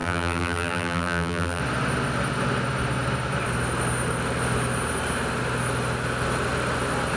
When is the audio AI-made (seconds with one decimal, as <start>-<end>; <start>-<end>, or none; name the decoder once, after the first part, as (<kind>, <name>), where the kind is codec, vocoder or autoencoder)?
0.0-1.6 (vocoder, BigVGAN v2)